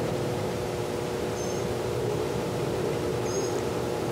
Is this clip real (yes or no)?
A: no